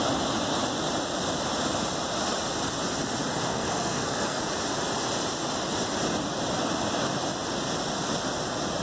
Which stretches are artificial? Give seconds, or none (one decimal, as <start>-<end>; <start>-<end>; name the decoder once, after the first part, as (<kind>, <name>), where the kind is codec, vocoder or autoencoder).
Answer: 3.5-4.4 (codec, SNAC)